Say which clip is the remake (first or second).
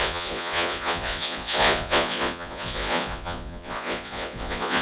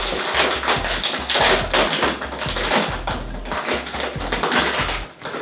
first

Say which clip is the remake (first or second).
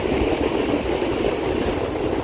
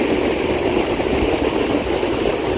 first